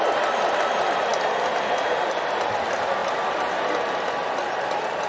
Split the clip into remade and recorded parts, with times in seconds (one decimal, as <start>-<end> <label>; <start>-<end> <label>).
0.0-5.1 recorded